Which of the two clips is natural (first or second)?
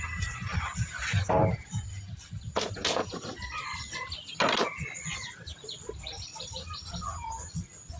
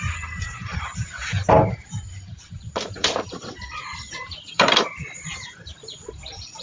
first